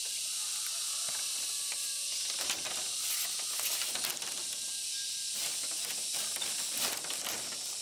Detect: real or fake real